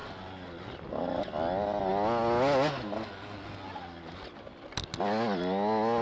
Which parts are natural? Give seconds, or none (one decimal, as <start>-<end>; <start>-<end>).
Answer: 0.0-6.0

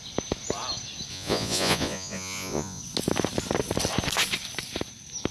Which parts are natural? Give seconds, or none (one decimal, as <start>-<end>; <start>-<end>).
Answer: 0.0-1.1; 2.8-5.3

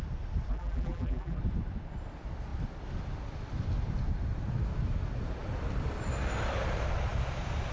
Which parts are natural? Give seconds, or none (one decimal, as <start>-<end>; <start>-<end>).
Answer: 0.0-0.5; 1.4-7.7

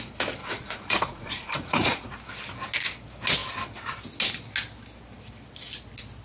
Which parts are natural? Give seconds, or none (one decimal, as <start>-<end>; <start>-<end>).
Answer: 0.0-0.4; 2.1-6.2

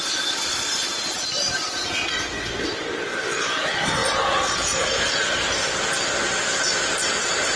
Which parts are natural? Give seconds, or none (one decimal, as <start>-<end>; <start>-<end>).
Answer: 0.0-7.6

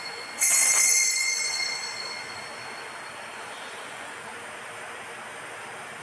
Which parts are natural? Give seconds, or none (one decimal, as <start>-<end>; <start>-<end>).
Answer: 1.8-3.3; 4.3-6.0

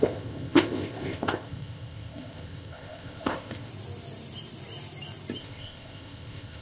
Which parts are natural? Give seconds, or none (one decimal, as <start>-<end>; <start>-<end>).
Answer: 3.7-5.4

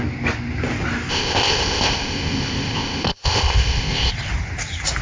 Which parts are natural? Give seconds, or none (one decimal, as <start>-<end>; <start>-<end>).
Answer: 0.0-1.1; 4.1-5.0